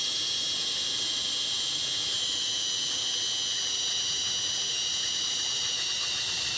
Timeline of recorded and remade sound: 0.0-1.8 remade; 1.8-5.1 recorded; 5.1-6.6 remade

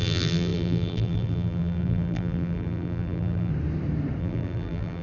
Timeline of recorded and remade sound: 0.0-3.5 remade; 3.5-4.2 recorded; 4.2-5.0 remade

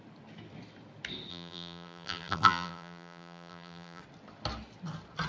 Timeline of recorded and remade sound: 0.0-1.3 recorded; 1.3-4.0 remade; 4.0-5.3 recorded

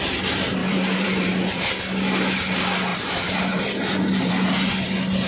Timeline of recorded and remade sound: 0.0-0.6 recorded; 0.6-1.7 remade; 1.7-2.9 recorded; 2.9-4.3 remade; 4.3-5.3 recorded

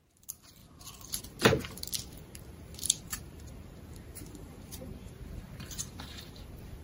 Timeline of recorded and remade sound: 0.0-0.6 remade; 0.6-1.2 recorded; 1.2-6.8 remade